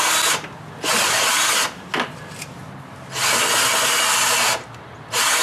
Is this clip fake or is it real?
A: real